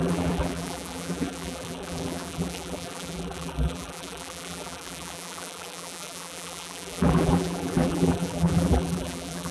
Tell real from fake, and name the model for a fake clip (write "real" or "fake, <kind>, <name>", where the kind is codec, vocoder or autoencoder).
fake, vocoder, BigVGAN v2